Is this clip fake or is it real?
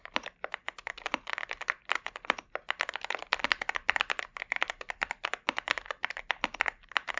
fake